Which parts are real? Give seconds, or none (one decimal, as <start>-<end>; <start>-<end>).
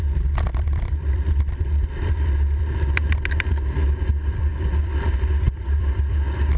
none